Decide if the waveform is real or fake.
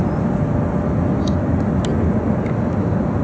real